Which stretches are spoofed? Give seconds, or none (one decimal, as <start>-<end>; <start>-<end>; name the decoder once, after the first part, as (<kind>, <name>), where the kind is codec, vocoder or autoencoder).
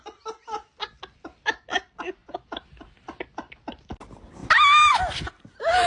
2.2-2.9 (vocoder, BigVGAN v2)